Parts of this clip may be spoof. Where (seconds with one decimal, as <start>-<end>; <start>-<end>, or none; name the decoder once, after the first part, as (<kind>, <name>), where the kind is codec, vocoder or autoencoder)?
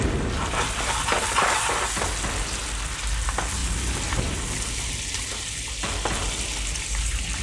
none